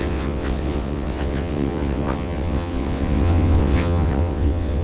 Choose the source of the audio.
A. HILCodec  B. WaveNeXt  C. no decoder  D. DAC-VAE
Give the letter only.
B